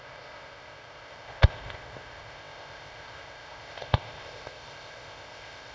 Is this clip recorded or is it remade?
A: remade